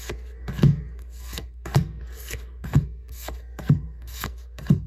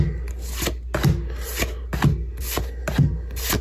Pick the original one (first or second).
second